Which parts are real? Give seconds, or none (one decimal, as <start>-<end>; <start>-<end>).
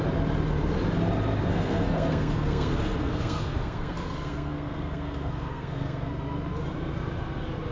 0.0-1.5; 6.1-7.7